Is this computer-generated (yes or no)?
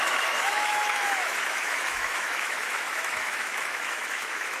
yes